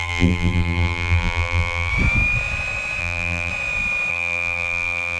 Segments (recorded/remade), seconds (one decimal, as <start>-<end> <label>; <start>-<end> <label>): 0.0-1.9 remade; 1.9-3.0 recorded; 3.0-3.5 remade; 3.5-4.1 recorded; 4.1-5.2 remade